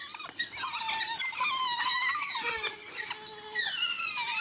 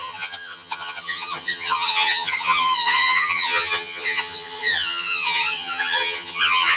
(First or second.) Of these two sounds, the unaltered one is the first